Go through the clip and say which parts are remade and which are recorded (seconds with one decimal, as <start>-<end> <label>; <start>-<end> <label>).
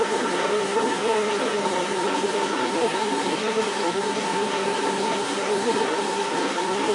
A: 0.0-6.9 remade